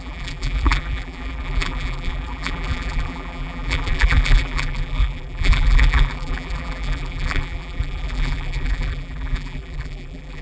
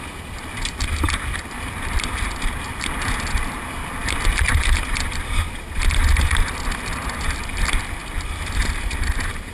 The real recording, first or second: second